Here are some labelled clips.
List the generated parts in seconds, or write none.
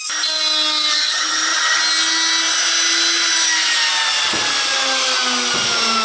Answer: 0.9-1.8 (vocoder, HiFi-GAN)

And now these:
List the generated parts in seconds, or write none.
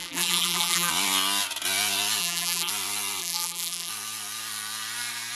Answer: 0.0-0.9 (vocoder, BigVGAN v2); 2.2-2.7; 3.2-3.9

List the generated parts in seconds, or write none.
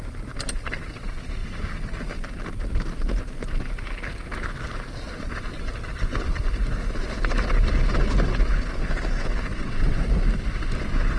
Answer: 9.5-10.1 (vocoder, WaveNeXt)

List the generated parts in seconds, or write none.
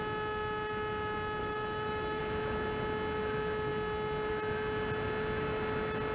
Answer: 1.4-2.2 (codec, DAC)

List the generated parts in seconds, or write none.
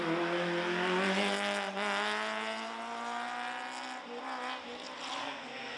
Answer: 5.2-5.8 (codec, SNAC)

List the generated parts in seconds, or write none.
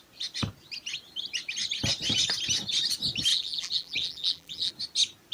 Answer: 3.3-4.7 (vocoder, BigVGAN v2)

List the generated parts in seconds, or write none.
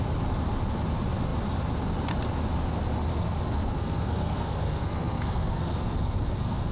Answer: 3.1-6.7 (codec, SNAC)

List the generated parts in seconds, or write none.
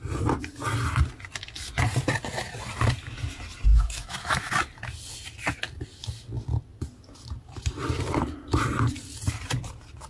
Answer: 3.7-4.5 (autoencoder, DAC-VAE)